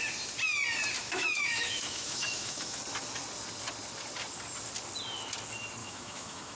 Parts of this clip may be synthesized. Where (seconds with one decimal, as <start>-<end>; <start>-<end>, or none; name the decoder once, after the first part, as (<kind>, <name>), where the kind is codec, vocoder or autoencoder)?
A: 1.0-2.8 (autoencoder, DAC-VAE); 5.8-6.6